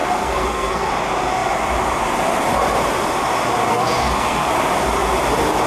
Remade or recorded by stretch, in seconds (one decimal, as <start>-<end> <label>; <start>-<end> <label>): 0.0-0.9 remade; 0.9-3.7 recorded; 3.7-4.5 remade; 4.5-5.7 recorded